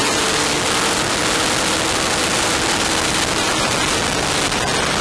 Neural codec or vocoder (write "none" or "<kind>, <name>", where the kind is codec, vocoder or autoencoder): none